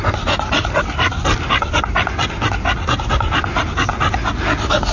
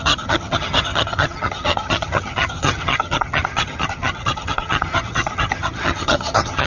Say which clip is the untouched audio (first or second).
first